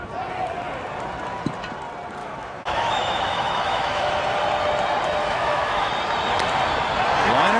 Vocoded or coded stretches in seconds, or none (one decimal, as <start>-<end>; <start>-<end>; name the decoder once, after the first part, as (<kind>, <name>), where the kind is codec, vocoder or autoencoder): 2.2-4.2 (autoencoder, DAC-VAE); 5.2-5.9